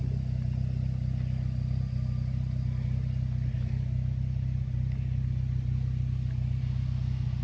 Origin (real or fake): real